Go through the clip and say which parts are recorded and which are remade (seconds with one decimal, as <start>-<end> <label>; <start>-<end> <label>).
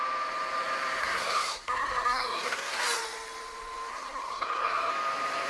0.0-1.0 recorded; 1.0-2.8 remade; 2.8-3.9 recorded; 3.9-4.9 remade; 4.9-5.5 recorded